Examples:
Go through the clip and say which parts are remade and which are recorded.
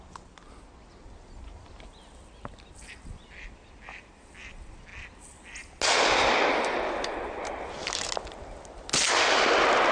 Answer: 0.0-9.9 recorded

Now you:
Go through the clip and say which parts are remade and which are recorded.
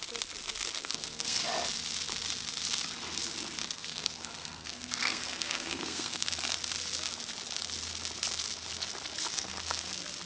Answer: 0.0-0.8 recorded; 0.8-1.4 remade; 1.4-3.6 recorded; 3.6-6.3 remade; 6.3-9.3 recorded; 9.3-9.9 remade; 9.9-10.3 recorded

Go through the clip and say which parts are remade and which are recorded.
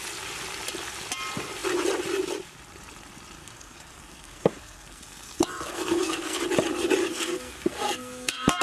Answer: 0.0-3.4 recorded; 3.4-6.4 remade; 6.4-7.0 recorded; 7.0-8.6 remade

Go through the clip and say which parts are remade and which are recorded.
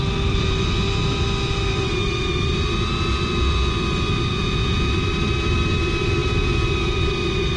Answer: 0.0-4.3 recorded; 4.3-4.9 remade; 4.9-7.6 recorded